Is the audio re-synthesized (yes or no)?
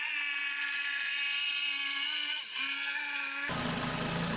no